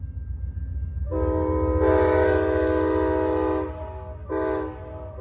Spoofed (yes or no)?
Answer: no